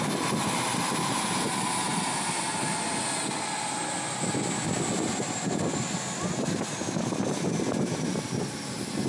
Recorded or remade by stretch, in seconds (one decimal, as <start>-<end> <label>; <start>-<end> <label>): 0.0-9.1 recorded